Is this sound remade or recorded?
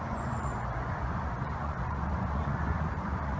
remade